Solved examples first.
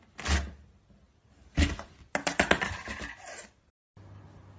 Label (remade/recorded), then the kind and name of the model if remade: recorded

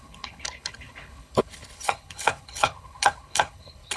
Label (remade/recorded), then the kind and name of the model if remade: remade, codec, HILCodec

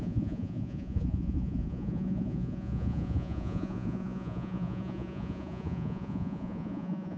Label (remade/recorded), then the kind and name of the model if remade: remade, vocoder, Vocos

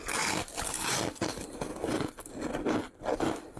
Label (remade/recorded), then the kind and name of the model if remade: recorded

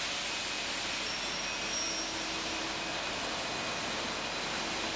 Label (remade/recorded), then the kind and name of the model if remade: recorded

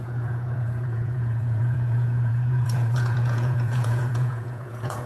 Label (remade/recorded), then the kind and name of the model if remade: remade, vocoder, Vocos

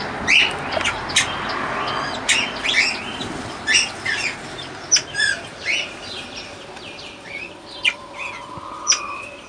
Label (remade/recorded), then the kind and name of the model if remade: recorded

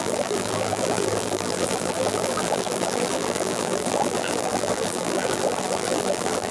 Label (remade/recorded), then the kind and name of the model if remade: remade, vocoder, BigVGAN v2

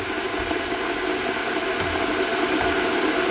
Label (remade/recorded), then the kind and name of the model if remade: recorded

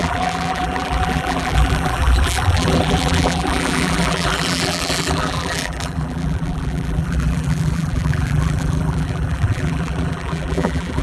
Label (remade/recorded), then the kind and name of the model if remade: remade, vocoder, BigVGAN v2